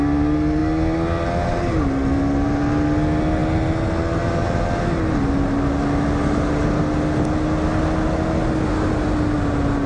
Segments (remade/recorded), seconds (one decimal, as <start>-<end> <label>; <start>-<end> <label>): 0.0-9.9 recorded